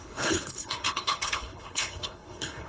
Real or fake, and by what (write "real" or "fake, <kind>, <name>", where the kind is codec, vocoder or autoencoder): fake, codec, HILCodec